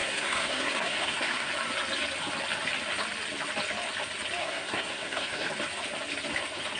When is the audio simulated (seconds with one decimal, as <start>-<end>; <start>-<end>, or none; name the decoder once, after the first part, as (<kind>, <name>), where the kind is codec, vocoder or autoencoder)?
0.0-1.5 (codec, SNAC); 4.4-5.5